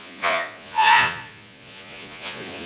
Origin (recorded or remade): remade